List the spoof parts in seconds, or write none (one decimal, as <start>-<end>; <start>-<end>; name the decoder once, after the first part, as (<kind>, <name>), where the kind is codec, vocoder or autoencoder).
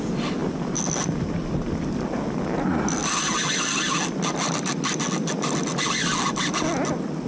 none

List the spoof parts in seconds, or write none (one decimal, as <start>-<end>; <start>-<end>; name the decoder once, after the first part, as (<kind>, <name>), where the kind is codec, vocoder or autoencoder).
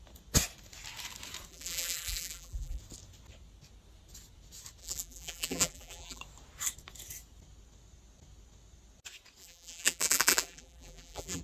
1.5-2.8 (vocoder, BigVGAN v2); 4.8-6.2; 9.4-11.4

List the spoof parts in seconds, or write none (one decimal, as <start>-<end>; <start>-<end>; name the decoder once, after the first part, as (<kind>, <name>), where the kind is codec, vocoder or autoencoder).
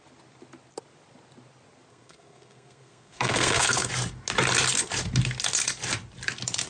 1.9-3.9 (codec, SNAC)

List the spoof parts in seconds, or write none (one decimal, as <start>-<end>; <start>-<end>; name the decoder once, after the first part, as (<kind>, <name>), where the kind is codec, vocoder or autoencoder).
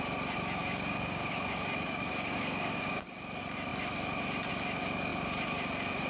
0.6-3.2 (codec, DAC)